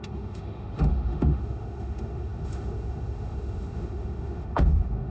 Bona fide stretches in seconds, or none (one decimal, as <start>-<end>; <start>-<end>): none